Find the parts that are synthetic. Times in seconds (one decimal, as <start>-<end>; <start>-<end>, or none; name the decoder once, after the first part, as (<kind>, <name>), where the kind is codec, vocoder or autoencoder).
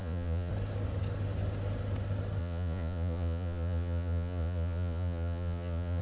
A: 0.0-0.5 (vocoder, Vocos); 2.4-6.0